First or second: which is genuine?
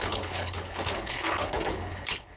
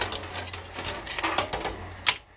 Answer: second